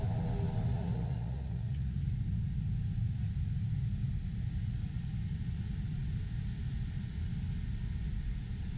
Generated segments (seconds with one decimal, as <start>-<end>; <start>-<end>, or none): 0.7-2.1